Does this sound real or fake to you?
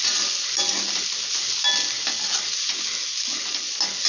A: real